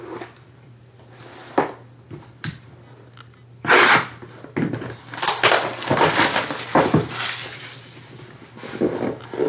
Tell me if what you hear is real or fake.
real